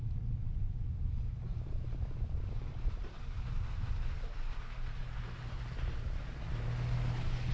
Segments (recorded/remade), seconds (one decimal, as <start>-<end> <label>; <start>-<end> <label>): 0.0-1.5 recorded; 1.5-4.2 remade; 4.2-5.0 recorded; 5.0-6.2 remade; 6.2-7.5 recorded